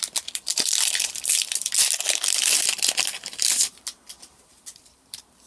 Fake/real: real